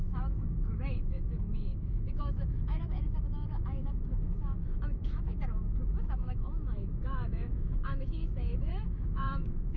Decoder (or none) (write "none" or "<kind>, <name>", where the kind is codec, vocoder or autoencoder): autoencoder, DAC-VAE